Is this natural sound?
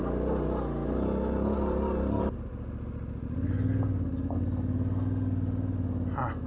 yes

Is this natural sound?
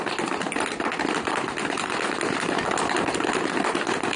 yes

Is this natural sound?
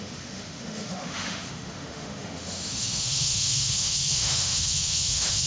no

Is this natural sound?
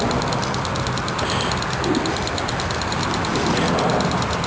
yes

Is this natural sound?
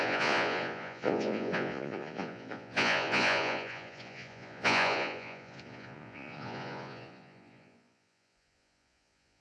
no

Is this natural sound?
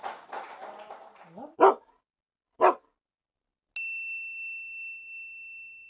yes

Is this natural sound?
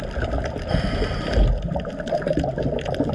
yes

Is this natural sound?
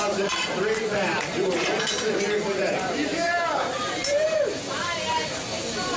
no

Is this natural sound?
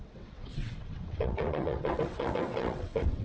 no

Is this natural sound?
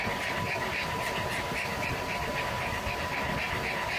yes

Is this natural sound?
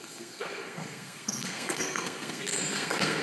no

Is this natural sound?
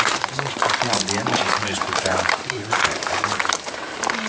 no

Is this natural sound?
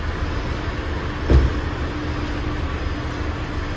yes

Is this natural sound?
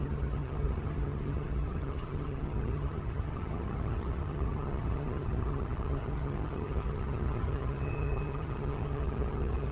no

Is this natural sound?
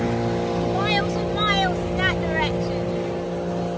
yes